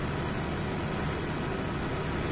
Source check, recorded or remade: recorded